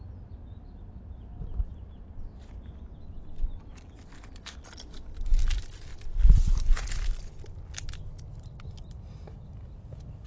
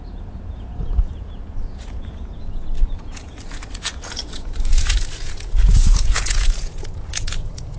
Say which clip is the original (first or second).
first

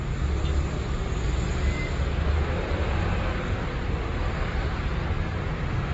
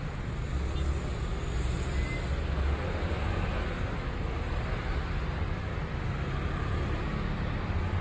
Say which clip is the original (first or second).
second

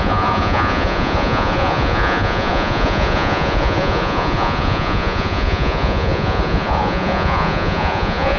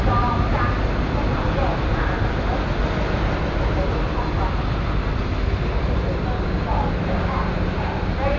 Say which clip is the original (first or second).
second